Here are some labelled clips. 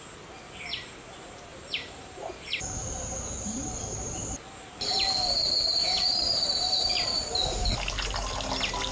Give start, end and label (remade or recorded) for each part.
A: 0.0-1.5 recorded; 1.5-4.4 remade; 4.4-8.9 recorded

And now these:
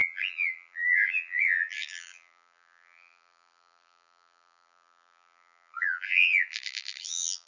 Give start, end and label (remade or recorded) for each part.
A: 0.0-7.5 remade

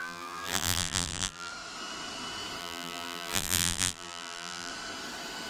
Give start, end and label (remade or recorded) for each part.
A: 0.0-1.5 remade; 1.5-2.6 recorded; 2.6-4.7 remade; 4.7-5.5 recorded

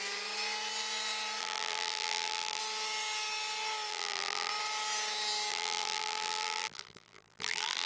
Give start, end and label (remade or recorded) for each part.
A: 0.0-1.4 recorded; 1.4-2.6 remade; 2.6-3.9 recorded; 3.9-4.5 remade; 4.5-5.5 recorded; 5.5-7.9 remade

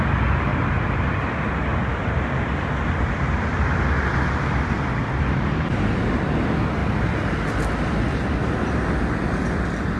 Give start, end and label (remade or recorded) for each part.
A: 0.0-0.5 recorded; 0.5-1.0 remade; 1.0-1.9 recorded; 1.9-5.1 remade; 5.1-6.8 recorded; 6.8-7.3 remade; 7.3-8.4 recorded; 8.4-10.0 remade

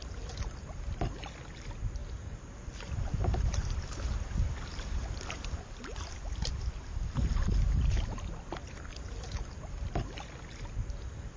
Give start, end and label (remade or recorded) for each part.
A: 0.0-2.0 recorded; 2.0-5.2 remade; 5.2-11.4 recorded

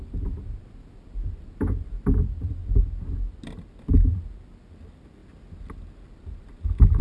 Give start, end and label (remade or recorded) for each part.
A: 0.0-2.6 remade; 2.6-3.8 recorded; 3.8-5.2 remade; 5.2-6.4 recorded; 6.4-7.0 remade

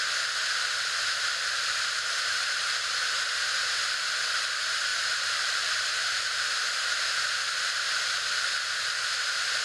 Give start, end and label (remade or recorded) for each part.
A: 0.0-4.9 recorded; 4.9-6.5 remade; 6.5-9.6 recorded